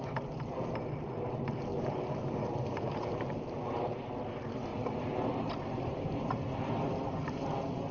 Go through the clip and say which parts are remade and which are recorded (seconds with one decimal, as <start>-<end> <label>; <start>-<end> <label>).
0.0-1.7 recorded; 1.7-3.4 remade; 3.4-4.7 recorded; 4.7-6.4 remade; 6.4-7.9 recorded